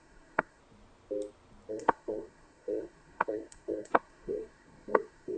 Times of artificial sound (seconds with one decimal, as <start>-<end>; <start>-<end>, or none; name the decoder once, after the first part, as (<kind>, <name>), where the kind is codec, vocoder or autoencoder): 0.0-0.6 (codec, SNAC); 1.7-5.4

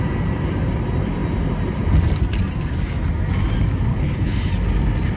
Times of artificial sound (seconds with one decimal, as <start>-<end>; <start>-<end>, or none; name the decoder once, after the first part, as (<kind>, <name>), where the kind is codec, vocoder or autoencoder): 3.9-4.5 (codec, HILCodec)

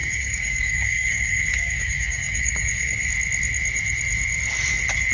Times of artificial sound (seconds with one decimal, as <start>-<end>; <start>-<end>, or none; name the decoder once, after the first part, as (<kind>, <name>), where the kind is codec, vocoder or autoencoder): 0.0-3.1 (codec, DAC)

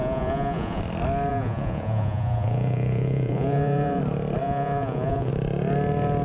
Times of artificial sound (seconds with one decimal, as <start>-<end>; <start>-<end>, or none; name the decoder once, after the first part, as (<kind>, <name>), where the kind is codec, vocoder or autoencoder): 0.0-0.8 (vocoder, Vocos); 1.3-4.0; 4.4-5.3

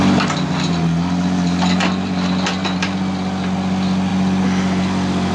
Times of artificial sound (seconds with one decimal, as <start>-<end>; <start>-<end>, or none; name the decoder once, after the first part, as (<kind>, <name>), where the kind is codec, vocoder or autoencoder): none

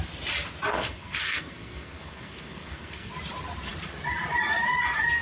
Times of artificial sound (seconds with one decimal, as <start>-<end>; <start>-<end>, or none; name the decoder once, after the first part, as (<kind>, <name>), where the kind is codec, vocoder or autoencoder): 0.7-3.1 (codec, SNAC)

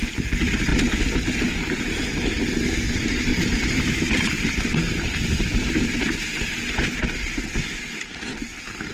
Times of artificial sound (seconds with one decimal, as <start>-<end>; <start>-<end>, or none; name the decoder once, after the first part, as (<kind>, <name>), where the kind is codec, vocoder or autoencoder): 3.3-5.6 (vocoder, BigVGAN v2)